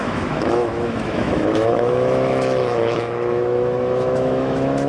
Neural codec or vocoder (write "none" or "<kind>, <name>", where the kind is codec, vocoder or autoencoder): autoencoder, DAC-VAE